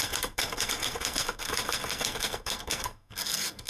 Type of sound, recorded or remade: remade